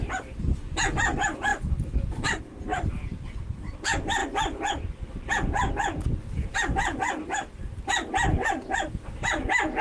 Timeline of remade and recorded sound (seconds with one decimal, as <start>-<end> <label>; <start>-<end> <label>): 0.0-1.5 recorded; 1.5-2.4 remade; 2.4-9.8 recorded